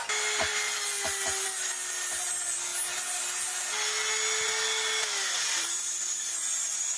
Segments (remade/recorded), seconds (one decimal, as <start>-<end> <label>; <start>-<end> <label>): 0.0-7.0 recorded